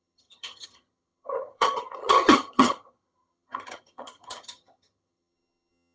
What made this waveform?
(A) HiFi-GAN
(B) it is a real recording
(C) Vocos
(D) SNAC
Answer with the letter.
A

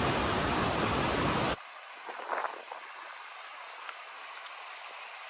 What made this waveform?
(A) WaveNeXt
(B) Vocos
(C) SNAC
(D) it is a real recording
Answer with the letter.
D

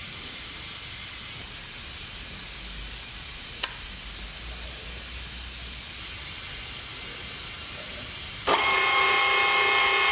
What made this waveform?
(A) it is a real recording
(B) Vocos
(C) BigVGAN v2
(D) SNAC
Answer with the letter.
A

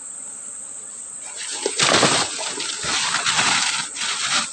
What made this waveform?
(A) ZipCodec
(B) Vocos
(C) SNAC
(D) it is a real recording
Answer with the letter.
D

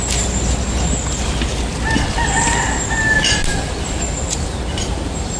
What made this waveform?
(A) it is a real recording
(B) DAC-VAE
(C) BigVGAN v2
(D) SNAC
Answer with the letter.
A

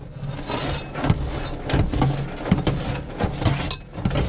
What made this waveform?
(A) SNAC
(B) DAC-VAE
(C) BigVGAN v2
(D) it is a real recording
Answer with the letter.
D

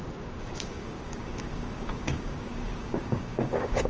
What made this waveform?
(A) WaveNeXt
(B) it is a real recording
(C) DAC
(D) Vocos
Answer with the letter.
C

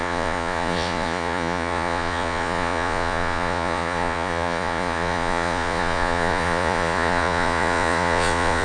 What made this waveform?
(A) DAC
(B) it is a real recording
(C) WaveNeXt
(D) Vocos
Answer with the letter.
D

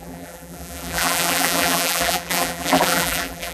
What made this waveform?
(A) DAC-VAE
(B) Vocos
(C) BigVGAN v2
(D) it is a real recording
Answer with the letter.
C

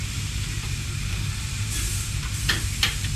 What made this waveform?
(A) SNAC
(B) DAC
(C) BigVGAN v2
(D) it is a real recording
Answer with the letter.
C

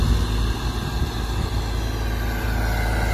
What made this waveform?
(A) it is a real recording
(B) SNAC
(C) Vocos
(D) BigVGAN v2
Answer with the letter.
A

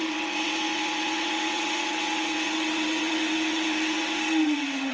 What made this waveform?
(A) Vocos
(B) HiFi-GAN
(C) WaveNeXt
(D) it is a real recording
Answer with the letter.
C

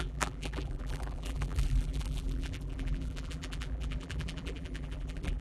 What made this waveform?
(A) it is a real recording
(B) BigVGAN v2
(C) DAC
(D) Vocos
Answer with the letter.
B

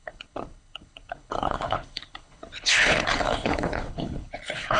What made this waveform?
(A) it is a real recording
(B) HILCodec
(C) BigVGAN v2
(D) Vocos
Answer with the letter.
B